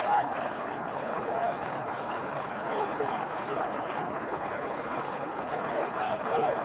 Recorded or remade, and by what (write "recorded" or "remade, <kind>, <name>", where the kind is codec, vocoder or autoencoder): remade, codec, HILCodec